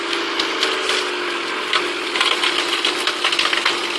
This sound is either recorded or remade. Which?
recorded